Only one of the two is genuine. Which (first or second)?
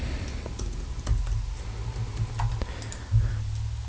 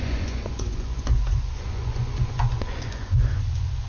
first